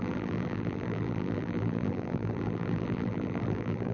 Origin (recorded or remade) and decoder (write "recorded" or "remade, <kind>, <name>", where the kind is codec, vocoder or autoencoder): remade, vocoder, BigVGAN v2